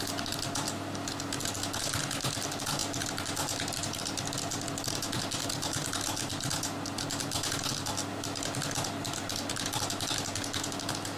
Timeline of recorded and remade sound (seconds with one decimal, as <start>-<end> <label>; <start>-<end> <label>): 0.0-11.2 recorded